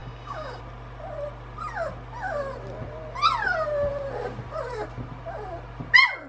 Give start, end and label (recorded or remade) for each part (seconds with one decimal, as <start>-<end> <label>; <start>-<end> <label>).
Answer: 0.0-0.6 remade; 0.6-6.3 recorded